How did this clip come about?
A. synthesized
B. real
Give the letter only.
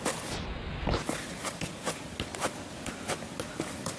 B